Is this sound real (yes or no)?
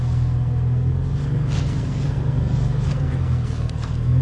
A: no